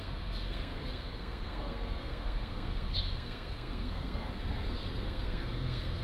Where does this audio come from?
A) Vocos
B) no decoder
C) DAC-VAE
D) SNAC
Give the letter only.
D